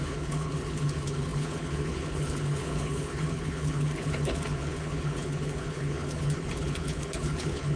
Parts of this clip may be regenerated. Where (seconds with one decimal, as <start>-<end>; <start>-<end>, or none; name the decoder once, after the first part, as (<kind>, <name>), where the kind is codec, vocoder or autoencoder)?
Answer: 0.0-7.8 (codec, HILCodec)